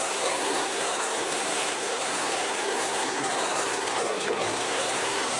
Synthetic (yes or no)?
yes